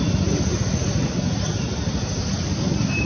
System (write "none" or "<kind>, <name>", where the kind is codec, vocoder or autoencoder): none